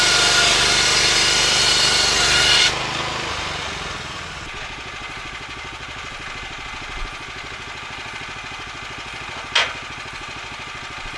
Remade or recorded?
recorded